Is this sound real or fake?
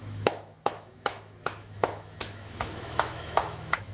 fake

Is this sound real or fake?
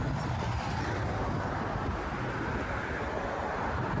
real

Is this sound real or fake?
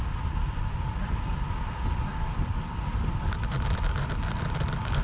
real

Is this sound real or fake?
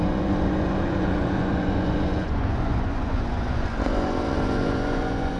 fake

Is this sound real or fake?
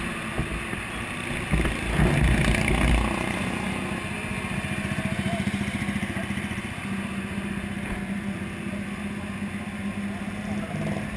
real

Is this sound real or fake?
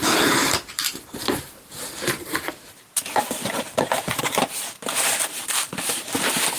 fake